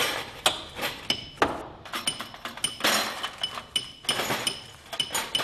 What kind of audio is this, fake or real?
real